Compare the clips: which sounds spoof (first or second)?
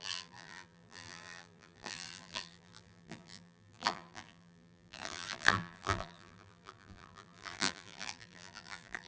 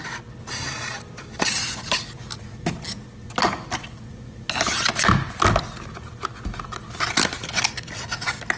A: first